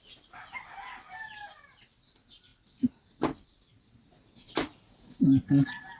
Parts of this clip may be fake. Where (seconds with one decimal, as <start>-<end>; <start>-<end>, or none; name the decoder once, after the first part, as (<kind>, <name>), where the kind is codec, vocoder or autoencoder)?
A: none